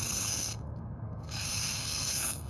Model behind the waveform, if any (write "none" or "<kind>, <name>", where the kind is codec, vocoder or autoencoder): codec, SNAC